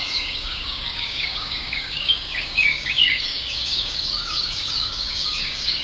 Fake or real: fake